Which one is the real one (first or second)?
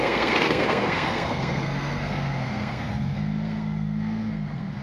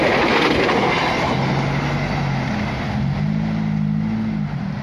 second